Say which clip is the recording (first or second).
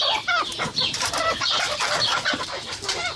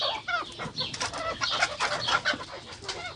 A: second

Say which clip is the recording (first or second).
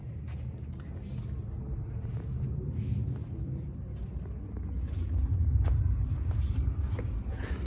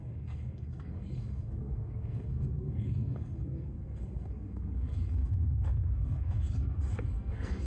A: first